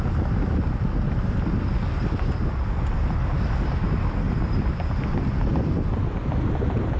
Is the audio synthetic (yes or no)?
no